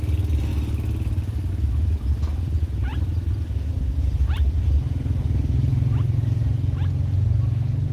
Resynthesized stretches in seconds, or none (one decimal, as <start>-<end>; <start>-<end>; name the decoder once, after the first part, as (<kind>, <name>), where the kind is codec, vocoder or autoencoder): 2.3-4.9 (vocoder, BigVGAN v2)